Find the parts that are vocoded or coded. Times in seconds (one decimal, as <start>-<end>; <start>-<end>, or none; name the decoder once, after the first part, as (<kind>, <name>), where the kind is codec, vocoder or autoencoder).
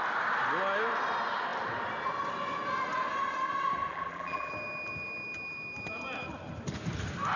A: 3.9-4.5 (vocoder, BigVGAN v2)